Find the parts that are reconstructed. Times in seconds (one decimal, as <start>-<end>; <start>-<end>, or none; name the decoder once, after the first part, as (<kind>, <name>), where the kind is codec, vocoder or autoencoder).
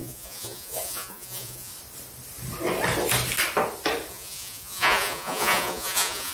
0.0-1.7 (vocoder, Vocos); 4.1-6.3